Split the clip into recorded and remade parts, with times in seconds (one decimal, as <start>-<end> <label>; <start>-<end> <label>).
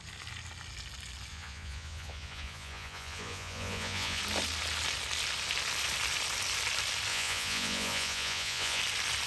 0.0-1.3 recorded; 1.3-4.2 remade; 4.2-7.1 recorded; 7.1-8.8 remade; 8.8-9.3 recorded